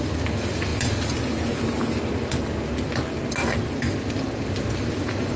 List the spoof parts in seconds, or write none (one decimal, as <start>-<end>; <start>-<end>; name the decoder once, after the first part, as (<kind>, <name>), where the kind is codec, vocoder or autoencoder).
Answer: none